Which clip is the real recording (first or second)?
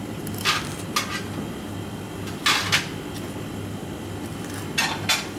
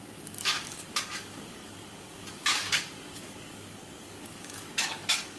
first